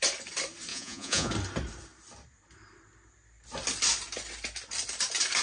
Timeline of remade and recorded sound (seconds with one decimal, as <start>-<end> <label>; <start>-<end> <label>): 0.0-0.7 recorded; 0.7-1.3 remade; 1.3-5.4 recorded